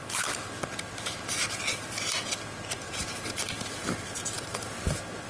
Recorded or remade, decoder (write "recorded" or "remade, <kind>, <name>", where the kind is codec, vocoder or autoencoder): recorded